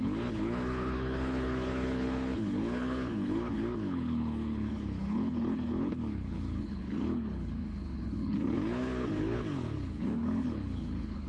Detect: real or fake fake